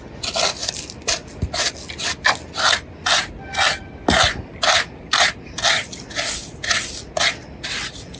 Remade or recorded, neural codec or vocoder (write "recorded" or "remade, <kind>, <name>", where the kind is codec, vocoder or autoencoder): recorded